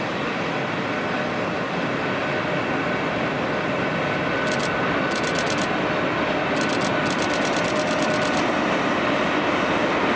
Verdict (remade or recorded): recorded